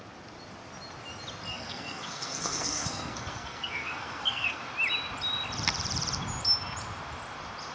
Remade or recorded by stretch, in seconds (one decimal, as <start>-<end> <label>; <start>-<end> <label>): 0.0-1.5 recorded; 1.5-4.6 remade; 4.6-7.7 recorded